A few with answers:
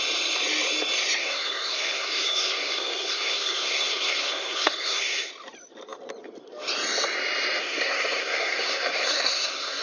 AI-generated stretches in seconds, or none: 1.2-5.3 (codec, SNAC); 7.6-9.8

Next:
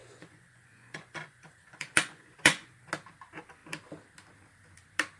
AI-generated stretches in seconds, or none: 0.0-2.9 (vocoder, Vocos)